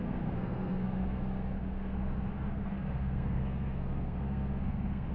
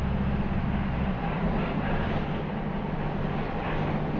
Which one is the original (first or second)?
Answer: second